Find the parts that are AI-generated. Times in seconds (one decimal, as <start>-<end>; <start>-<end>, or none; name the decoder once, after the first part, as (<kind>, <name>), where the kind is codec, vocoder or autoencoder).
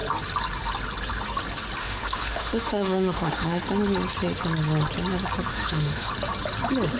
1.8-3.6 (autoencoder, DAC-VAE); 5.5-6.1